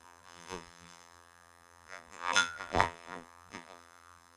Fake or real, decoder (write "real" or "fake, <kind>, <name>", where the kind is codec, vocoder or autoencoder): fake, vocoder, BigVGAN v2